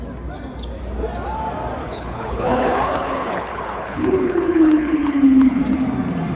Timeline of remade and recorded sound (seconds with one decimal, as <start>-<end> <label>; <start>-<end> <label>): 0.0-1.8 recorded; 1.8-5.6 remade; 5.6-6.4 recorded